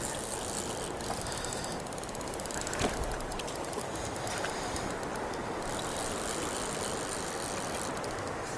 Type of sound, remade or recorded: recorded